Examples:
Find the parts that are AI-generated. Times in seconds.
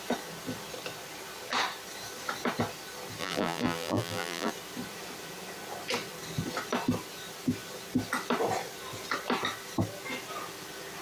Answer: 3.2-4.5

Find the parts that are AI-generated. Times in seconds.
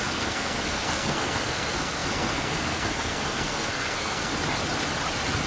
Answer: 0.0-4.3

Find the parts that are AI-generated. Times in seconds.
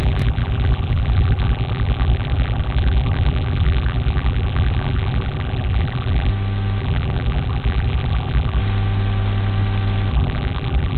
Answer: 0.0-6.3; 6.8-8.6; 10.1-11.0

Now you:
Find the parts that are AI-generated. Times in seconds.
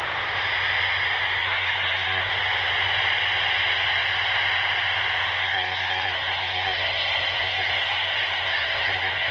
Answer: 1.4-2.3; 5.4-9.3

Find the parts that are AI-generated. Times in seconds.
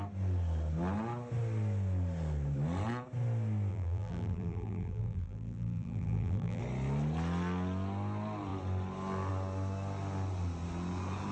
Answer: 3.7-6.6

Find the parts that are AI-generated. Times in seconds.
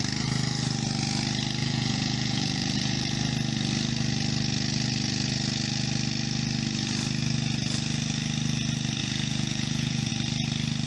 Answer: 1.6-3.1; 9.0-10.1